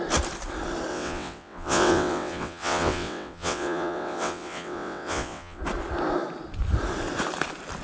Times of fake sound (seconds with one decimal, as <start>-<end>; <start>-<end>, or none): 0.9-5.6